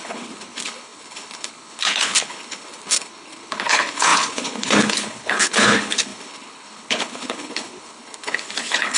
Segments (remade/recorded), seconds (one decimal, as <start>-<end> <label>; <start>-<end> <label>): 0.0-9.0 remade